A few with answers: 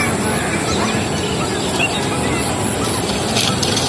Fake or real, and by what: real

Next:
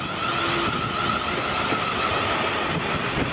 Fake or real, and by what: real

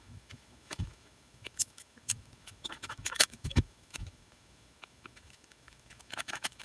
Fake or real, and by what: fake, autoencoder, DAC-VAE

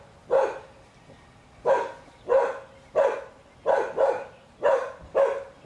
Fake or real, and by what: real